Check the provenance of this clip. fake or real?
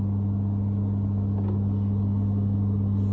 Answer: real